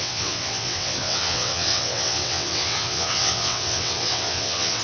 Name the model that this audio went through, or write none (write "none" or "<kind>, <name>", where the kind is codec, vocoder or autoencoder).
vocoder, WaveNeXt